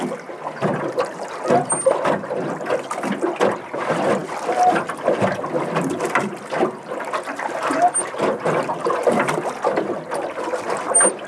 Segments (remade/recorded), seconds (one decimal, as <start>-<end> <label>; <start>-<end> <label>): 0.0-11.3 recorded